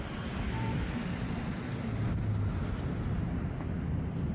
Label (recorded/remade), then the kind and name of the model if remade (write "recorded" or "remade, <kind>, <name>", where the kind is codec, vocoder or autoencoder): recorded